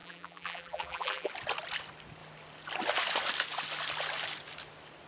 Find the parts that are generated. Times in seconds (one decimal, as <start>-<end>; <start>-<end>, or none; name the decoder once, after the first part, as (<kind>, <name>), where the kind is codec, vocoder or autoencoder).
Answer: 0.0-1.3 (vocoder, BigVGAN v2)